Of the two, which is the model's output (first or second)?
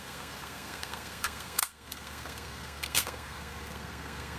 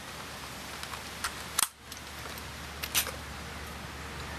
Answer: first